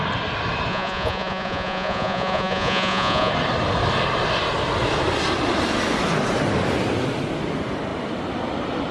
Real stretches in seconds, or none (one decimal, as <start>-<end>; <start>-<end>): 0.0-0.7; 3.3-8.9